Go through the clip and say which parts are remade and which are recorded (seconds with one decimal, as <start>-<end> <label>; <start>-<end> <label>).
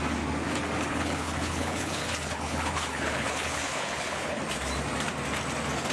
0.0-0.9 recorded; 0.9-4.4 remade; 4.4-5.9 recorded